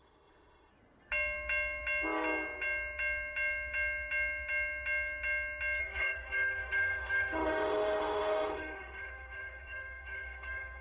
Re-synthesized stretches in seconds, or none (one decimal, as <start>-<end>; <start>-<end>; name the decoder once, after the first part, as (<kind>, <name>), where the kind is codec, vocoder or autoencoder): 0.0-0.7 (autoencoder, DAC-VAE); 5.8-10.8